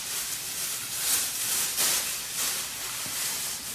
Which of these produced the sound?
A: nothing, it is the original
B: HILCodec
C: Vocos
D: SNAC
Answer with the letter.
A